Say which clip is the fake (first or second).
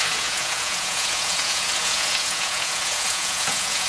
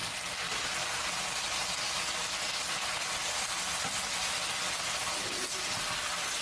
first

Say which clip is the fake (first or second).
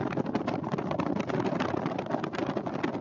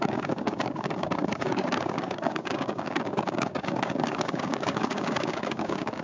second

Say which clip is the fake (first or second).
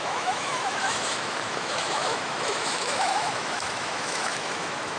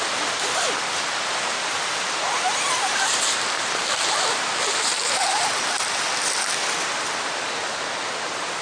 first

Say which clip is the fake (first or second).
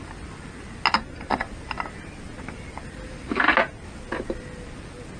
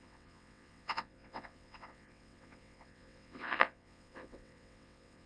second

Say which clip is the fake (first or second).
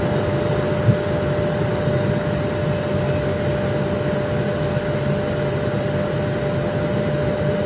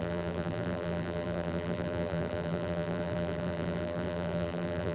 second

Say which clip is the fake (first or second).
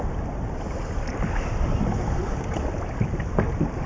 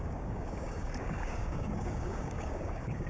second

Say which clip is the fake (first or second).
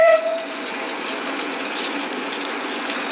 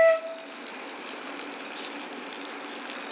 first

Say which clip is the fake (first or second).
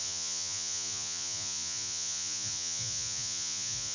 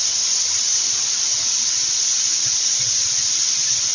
first